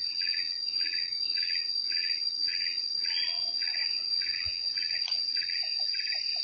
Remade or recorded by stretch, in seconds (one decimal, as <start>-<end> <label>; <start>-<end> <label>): 0.0-5.6 remade; 5.6-6.4 recorded